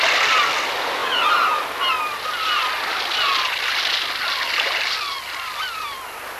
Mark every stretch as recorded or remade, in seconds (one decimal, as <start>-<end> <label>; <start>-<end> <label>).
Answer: 0.0-6.4 recorded